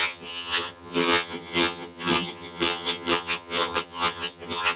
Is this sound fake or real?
fake